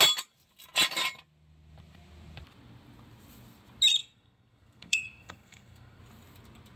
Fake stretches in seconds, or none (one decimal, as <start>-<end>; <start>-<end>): 4.0-6.0